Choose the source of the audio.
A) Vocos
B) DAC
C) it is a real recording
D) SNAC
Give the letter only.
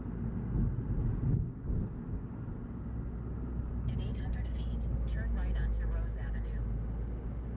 C